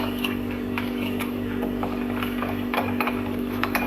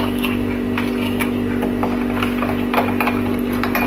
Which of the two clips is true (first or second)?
second